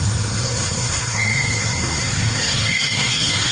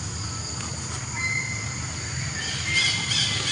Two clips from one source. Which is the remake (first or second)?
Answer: first